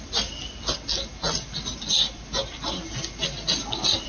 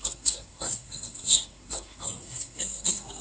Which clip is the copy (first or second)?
second